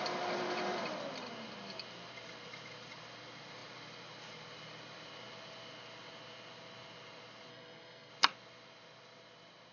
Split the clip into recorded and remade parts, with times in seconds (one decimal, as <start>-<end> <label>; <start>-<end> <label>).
0.0-7.5 recorded; 7.5-8.1 remade; 8.1-9.7 recorded